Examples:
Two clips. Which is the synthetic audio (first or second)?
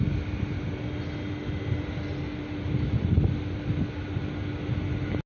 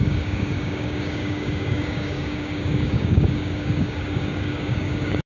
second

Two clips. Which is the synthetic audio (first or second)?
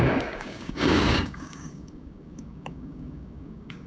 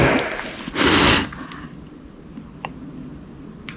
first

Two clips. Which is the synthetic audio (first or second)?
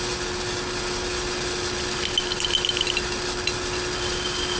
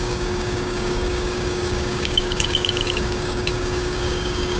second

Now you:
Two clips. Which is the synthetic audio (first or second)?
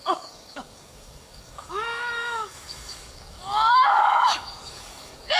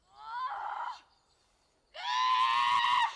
first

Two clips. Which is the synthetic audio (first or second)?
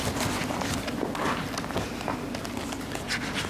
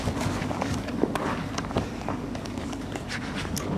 second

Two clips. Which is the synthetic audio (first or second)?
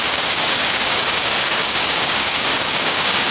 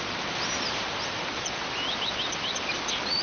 first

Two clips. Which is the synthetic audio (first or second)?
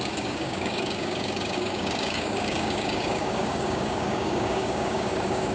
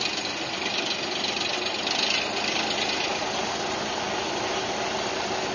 first